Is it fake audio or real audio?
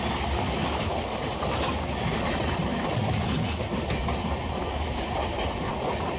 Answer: real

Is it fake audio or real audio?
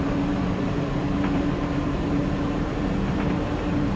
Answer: fake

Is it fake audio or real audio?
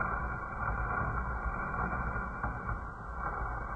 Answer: real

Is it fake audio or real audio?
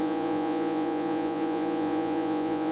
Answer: fake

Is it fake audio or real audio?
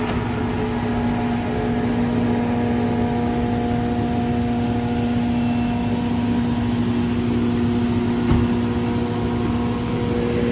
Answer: real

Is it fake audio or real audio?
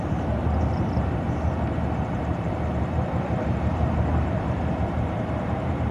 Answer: fake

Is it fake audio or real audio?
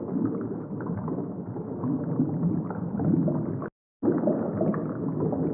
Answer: real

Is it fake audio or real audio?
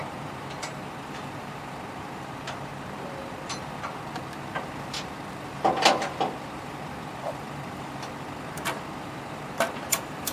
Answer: fake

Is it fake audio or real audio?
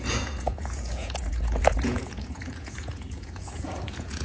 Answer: fake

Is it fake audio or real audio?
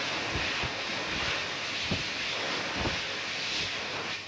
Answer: real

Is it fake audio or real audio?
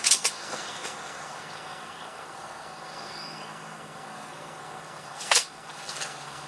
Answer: fake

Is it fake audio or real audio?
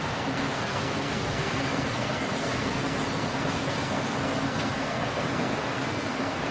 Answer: fake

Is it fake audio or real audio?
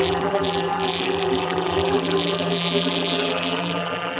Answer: fake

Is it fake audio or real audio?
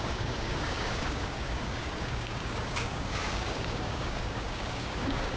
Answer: fake